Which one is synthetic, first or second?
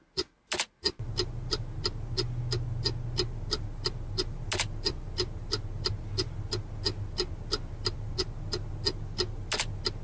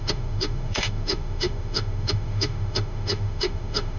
second